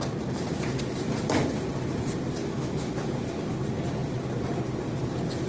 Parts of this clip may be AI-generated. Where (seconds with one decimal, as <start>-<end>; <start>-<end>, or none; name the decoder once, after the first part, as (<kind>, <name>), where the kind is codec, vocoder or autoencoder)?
2.4-2.9 (autoencoder, DAC-VAE)

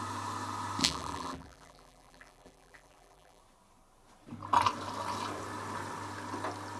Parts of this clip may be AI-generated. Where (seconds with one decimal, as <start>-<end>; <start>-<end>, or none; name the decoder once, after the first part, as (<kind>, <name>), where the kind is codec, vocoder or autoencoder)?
0.8-3.4 (vocoder, BigVGAN v2)

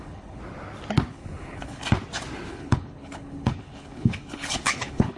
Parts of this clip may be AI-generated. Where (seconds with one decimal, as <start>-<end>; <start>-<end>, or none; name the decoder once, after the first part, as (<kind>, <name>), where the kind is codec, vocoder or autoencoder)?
0.0-0.4 (codec, HILCodec); 1.1-1.8; 2.5-5.2

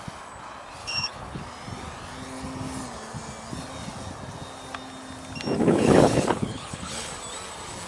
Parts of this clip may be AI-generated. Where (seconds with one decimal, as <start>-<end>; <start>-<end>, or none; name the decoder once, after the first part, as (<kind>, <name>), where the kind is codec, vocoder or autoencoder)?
0.8-1.4 (codec, HILCodec); 5.6-7.1